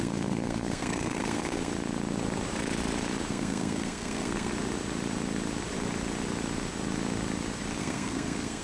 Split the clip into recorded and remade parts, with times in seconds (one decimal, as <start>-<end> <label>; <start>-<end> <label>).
0.0-1.7 remade; 1.7-3.3 recorded; 3.3-4.5 remade; 4.5-7.8 recorded; 7.8-8.6 remade